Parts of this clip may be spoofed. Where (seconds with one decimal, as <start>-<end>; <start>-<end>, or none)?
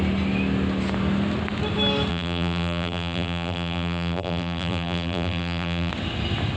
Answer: 2.1-5.9